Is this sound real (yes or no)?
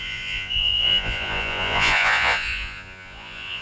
no